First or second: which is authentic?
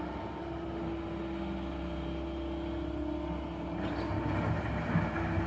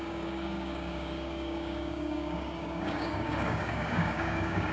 first